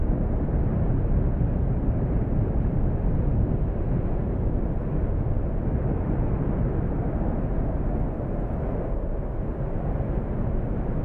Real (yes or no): yes